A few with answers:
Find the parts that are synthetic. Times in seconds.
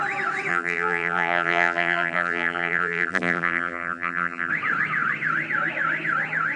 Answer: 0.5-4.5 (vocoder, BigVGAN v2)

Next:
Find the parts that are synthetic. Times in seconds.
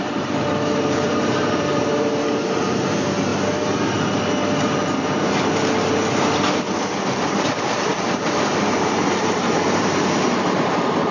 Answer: 0.0-3.3 (vocoder, BigVGAN v2); 7.3-11.1